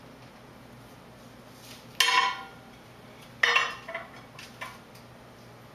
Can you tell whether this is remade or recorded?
recorded